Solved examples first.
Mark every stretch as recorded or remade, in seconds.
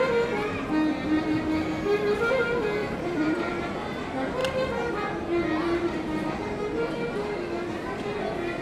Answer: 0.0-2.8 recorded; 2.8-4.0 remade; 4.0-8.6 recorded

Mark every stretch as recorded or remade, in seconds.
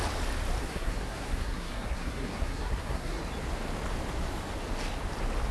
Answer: 0.0-0.6 recorded; 0.6-3.2 remade; 3.2-5.5 recorded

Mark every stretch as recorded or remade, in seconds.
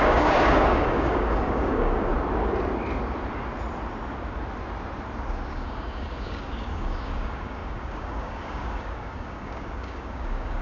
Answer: 0.0-2.1 remade; 2.1-5.5 recorded; 5.5-10.6 remade